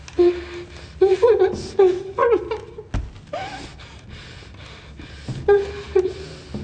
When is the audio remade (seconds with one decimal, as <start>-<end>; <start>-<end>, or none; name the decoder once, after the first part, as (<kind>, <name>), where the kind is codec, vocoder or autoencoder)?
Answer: none

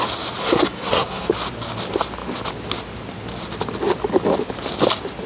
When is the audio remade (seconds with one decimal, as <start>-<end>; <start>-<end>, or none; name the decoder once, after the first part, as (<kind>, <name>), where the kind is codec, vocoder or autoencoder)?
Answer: 0.4-1.3 (codec, SNAC)

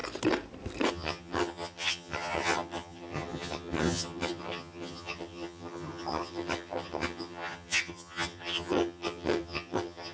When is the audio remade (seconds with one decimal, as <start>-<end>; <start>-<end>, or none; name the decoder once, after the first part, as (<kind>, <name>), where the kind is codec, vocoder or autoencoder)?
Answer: 0.9-10.1 (vocoder, HiFi-GAN)